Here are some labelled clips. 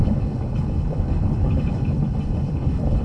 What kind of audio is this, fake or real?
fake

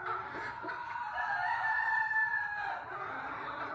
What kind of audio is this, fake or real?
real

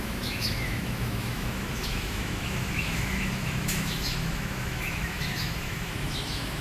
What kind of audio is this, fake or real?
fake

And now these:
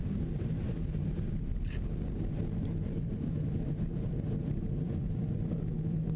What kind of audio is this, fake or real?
fake